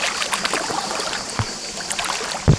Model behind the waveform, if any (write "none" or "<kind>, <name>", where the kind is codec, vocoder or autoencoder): none